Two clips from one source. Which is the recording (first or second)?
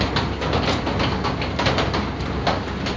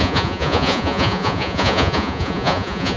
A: first